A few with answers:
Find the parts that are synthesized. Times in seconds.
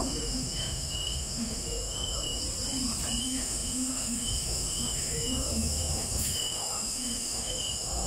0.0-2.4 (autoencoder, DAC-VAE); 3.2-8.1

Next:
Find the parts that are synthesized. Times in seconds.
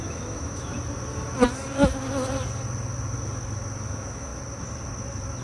0.0-0.7 (autoencoder, DAC-VAE); 3.9-4.3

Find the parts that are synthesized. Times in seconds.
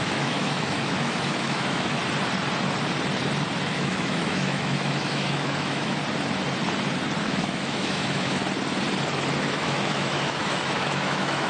0.0-2.0 (autoencoder, DAC-VAE); 3.7-6.0; 7.2-8.4; 9.4-11.5